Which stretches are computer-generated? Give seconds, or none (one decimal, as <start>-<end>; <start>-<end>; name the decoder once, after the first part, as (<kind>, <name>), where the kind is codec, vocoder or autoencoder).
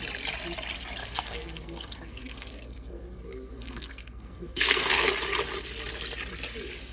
1.0-5.1 (codec, SNAC)